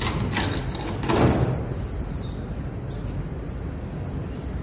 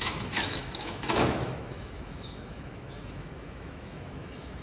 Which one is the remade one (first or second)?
second